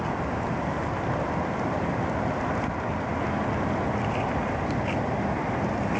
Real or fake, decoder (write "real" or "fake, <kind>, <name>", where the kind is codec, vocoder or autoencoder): real